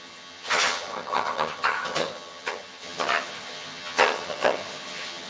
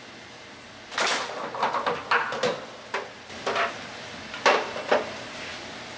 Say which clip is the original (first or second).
second